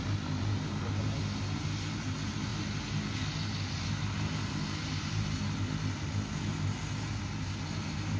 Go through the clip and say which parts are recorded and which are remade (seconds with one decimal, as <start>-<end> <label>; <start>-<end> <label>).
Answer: 0.0-8.2 recorded